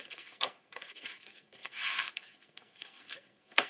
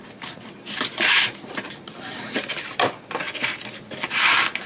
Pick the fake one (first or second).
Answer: first